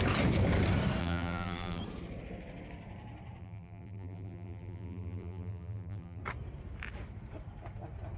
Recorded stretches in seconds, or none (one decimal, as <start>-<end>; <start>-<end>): 0.0-1.0; 1.8-3.4; 6.2-8.2